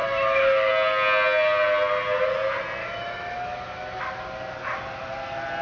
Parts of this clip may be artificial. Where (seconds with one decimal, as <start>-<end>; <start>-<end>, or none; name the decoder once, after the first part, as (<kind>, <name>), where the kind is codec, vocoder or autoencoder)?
0.0-0.7 (autoencoder, DAC-VAE); 2.8-4.0